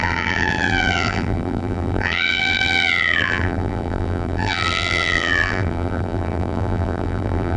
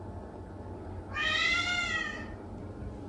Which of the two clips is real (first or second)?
second